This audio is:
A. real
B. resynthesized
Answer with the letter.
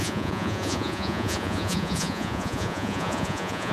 B